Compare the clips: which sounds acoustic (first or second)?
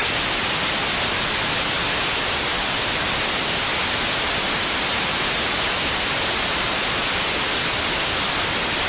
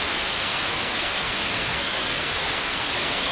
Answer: first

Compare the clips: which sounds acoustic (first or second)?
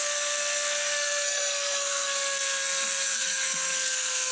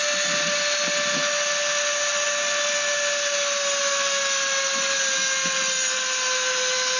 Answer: second